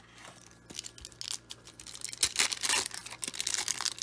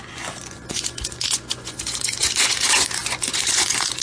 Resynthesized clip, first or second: second